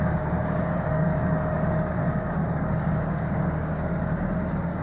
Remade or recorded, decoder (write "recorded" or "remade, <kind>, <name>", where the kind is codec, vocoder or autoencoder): remade, codec, DAC